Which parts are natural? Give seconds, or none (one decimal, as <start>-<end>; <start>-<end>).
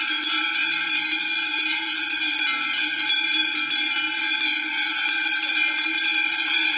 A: 0.0-6.8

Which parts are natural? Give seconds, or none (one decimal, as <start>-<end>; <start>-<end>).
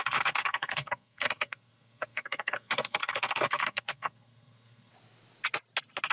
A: 4.9-6.1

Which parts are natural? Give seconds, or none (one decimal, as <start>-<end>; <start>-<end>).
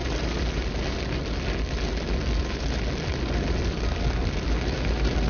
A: 0.0-5.3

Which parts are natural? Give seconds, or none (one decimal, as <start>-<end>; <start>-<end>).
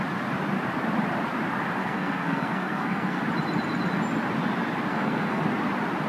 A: 0.0-1.8; 3.2-4.9; 5.4-6.1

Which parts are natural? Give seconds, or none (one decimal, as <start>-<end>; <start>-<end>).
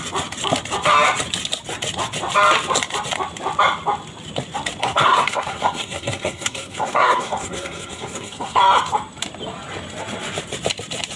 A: 0.0-4.8; 8.6-11.2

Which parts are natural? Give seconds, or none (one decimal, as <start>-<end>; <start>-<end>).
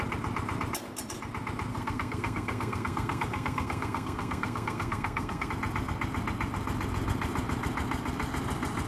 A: 0.0-1.7; 5.5-8.9